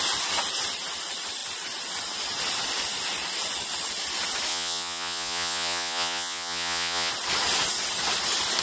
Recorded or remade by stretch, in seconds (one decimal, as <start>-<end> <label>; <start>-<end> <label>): 0.0-4.5 recorded; 4.5-7.1 remade; 7.1-8.6 recorded